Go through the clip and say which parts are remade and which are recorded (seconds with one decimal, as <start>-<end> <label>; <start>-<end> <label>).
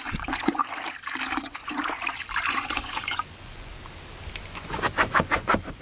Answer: 0.0-0.6 remade; 0.6-1.4 recorded; 1.4-1.8 remade; 1.8-2.5 recorded; 2.5-3.7 remade; 3.7-4.4 recorded; 4.4-5.8 remade